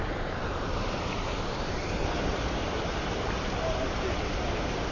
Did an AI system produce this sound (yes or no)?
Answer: yes